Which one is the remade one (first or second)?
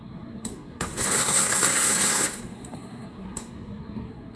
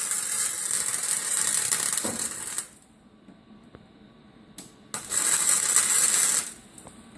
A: first